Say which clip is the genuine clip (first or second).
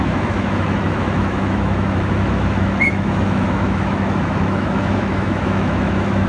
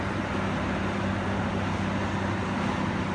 second